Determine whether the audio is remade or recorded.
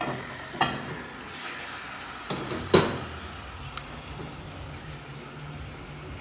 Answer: recorded